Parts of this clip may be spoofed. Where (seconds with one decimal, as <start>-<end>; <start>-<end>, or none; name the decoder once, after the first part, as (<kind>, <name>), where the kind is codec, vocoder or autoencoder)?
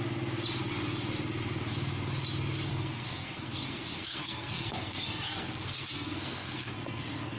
2.7-7.4 (codec, SNAC)